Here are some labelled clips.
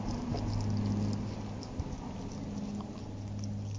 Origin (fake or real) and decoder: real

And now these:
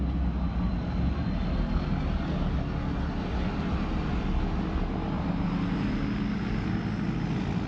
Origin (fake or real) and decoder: real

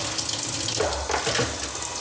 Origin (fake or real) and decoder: real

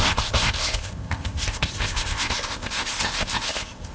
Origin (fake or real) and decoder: fake, codec, ZipCodec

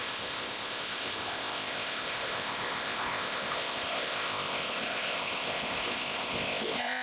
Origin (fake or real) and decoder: fake, codec, ZipCodec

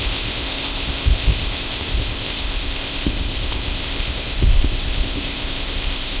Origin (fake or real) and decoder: fake, codec, ZipCodec